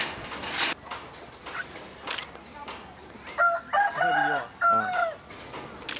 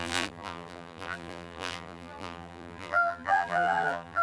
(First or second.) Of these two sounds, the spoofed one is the second